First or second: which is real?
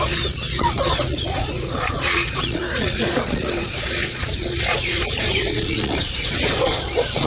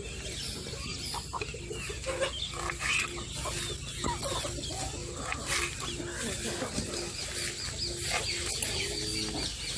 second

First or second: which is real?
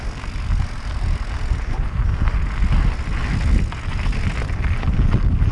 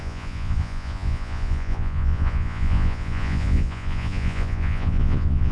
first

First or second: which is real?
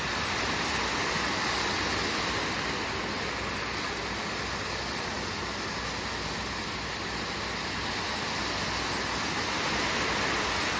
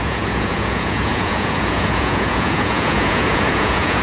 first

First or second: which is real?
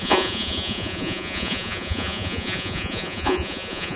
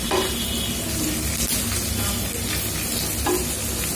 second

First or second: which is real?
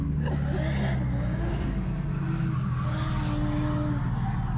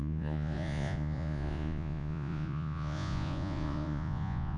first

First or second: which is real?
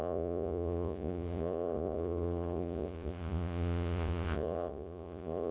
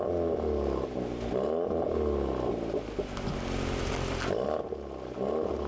second